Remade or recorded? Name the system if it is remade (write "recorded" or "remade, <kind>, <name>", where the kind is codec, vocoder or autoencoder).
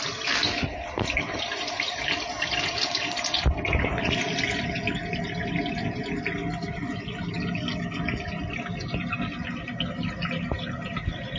recorded